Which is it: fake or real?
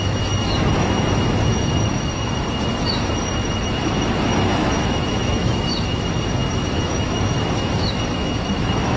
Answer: fake